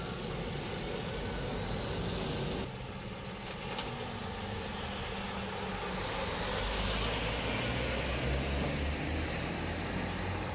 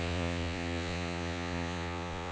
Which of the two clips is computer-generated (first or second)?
second